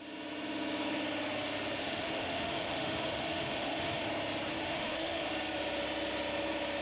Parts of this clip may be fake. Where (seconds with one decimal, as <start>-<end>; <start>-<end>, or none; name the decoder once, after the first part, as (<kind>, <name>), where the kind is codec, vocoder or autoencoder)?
1.8-4.1 (autoencoder, DAC-VAE); 4.5-5.3